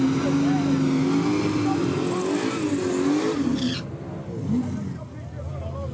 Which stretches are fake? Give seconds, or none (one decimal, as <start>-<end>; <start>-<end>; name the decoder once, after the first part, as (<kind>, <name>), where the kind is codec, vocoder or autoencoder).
none